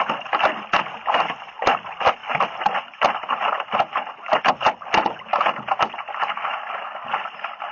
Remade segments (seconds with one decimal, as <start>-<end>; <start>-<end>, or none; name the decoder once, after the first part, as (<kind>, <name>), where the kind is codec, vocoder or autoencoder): none